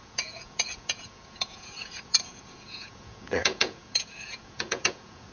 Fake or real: fake